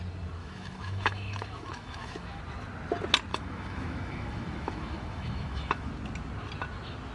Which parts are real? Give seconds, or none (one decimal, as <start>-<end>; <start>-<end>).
0.0-0.4; 2.4-3.3; 5.9-7.1